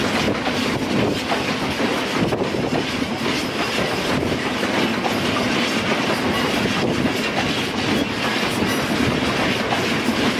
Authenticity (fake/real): real